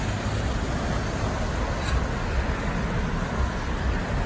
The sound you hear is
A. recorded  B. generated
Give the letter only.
A